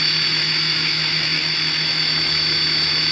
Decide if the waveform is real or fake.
fake